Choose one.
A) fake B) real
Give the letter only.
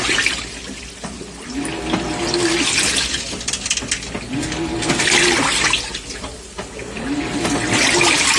B